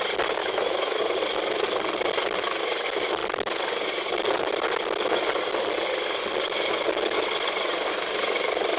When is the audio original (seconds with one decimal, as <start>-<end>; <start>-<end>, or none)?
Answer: 0.0-0.4; 1.0-8.8